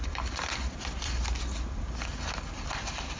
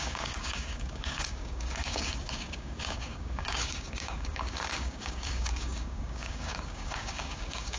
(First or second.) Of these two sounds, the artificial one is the second